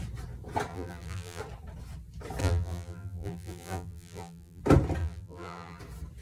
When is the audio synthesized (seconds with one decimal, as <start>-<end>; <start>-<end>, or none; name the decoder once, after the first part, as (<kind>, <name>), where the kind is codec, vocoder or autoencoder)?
0.7-1.4 (vocoder, BigVGAN v2); 2.4-4.6; 5.0-5.8